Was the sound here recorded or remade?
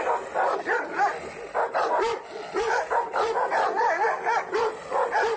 recorded